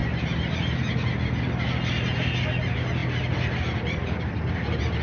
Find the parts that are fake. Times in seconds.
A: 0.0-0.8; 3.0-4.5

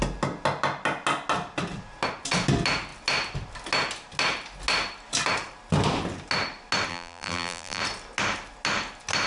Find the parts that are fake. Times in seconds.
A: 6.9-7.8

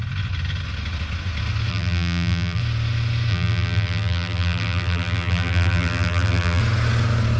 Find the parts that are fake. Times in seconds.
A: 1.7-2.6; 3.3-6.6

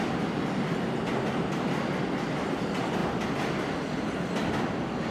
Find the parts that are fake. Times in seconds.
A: none

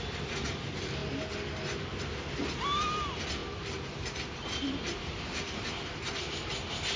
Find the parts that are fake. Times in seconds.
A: 3.4-5.6

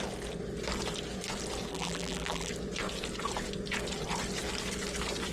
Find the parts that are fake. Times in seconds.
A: 1.7-2.5